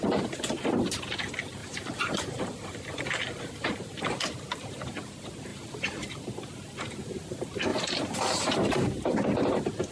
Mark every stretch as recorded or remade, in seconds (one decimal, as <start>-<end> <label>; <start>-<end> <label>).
0.0-1.6 recorded; 1.6-3.5 remade; 3.5-5.5 recorded; 5.5-6.2 remade; 6.2-7.7 recorded; 7.7-8.4 remade; 8.4-9.9 recorded